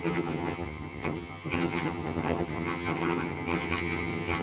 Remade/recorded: remade